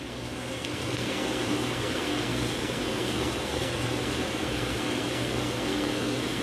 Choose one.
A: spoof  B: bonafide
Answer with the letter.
A